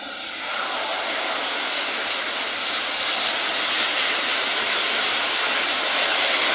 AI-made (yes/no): no